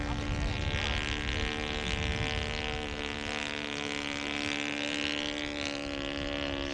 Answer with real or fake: real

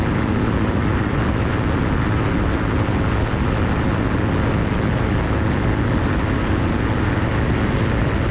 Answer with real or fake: real